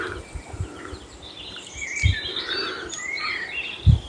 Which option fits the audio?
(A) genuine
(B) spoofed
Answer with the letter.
B